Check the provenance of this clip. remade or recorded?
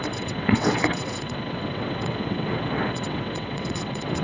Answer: remade